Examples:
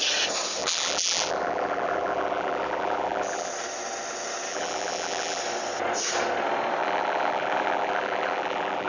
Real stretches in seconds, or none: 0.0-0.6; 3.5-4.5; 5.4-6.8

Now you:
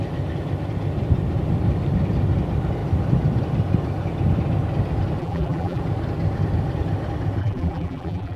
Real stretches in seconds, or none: 0.0-5.2; 5.8-7.4